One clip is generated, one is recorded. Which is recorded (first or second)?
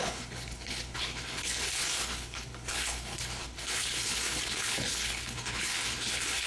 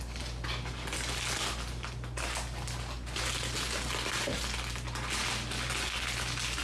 second